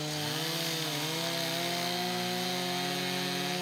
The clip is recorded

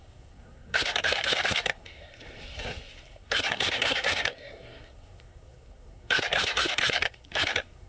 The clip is remade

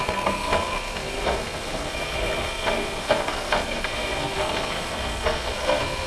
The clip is remade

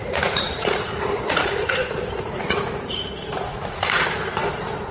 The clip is remade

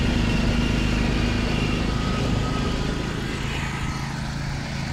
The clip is recorded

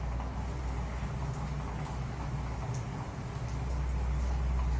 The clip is recorded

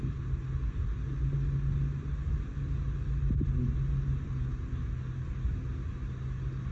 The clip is recorded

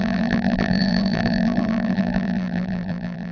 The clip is remade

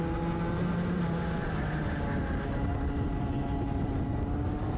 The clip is recorded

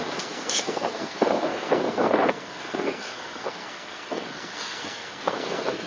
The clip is remade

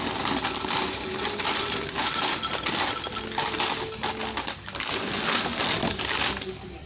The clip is recorded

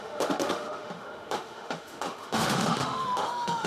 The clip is remade